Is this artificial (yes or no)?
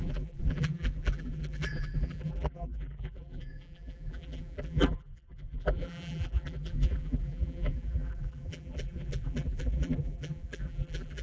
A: yes